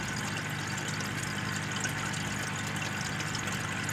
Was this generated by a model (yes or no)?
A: no